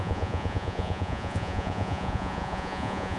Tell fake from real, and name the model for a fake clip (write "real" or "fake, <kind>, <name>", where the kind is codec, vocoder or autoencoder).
fake, vocoder, Vocos